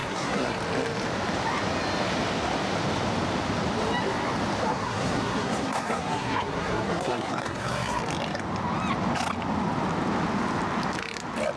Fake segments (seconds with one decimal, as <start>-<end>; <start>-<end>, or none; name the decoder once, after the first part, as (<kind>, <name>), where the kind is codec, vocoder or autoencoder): 0.0-0.6 (codec, SNAC); 4.7-8.0